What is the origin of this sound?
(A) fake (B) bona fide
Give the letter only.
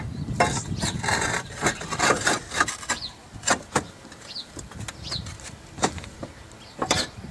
A